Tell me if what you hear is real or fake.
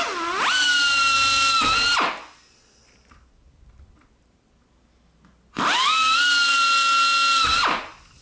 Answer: real